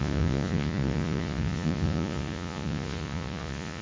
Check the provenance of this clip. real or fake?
fake